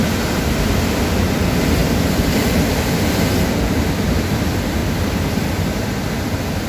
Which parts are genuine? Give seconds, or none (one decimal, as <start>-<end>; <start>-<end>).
0.7-1.8; 3.9-4.8; 6.1-6.7